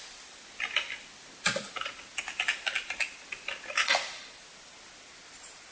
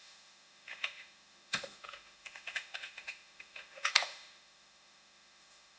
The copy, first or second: second